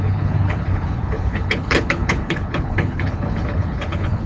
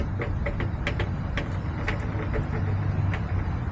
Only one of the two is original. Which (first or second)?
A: second